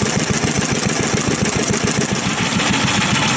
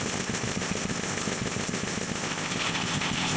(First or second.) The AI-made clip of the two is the second